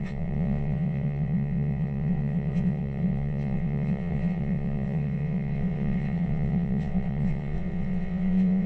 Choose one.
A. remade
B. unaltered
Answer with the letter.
A